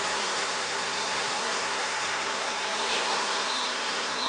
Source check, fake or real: fake